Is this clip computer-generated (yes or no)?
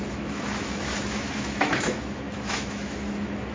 yes